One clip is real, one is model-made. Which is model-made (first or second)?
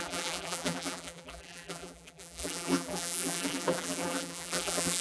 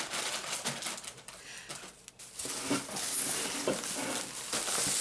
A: first